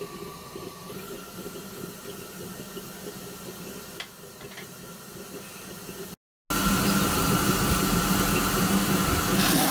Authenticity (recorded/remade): recorded